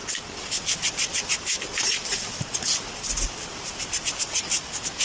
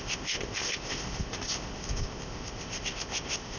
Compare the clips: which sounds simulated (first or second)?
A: second